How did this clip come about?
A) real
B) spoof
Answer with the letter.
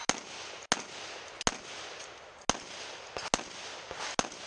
A